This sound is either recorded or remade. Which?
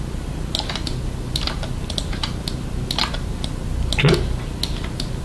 recorded